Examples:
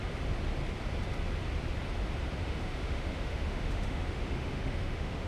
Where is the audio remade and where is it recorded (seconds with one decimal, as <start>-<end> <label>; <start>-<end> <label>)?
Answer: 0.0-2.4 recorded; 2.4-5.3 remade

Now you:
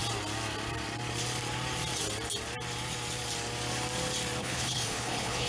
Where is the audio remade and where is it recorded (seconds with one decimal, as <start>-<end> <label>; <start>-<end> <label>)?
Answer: 0.0-4.4 recorded; 4.4-5.5 remade

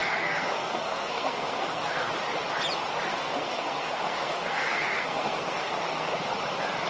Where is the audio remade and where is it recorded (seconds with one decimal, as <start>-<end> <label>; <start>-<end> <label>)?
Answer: 0.0-2.1 remade; 2.1-3.1 recorded; 3.1-6.1 remade; 6.1-6.9 recorded

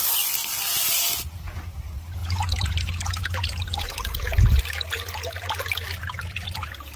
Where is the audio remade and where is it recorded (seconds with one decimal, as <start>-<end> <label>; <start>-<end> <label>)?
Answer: 0.0-2.2 recorded; 2.2-4.4 remade; 4.4-7.0 recorded

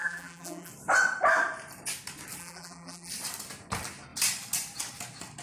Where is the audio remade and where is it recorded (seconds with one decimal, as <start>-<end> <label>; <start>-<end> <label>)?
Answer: 0.0-0.7 remade; 0.7-2.4 recorded; 2.4-3.1 remade; 3.1-5.4 recorded

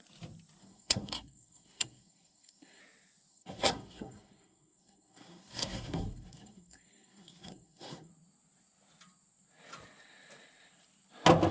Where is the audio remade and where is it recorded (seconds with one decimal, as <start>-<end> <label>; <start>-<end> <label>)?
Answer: 0.0-0.6 recorded; 0.6-2.8 remade; 2.8-3.3 recorded; 3.3-8.1 remade; 8.1-11.5 recorded

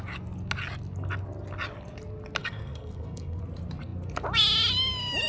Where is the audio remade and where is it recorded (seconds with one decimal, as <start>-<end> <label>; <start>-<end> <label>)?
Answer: 0.0-2.4 recorded; 2.4-3.4 remade; 3.4-5.3 recorded